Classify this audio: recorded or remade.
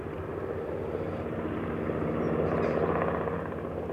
recorded